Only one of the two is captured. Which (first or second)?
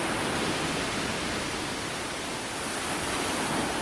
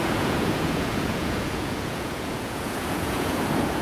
first